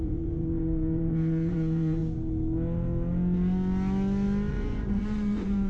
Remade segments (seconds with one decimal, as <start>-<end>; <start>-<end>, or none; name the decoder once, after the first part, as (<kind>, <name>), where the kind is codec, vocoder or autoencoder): 0.0-2.0 (vocoder, Vocos); 4.5-5.7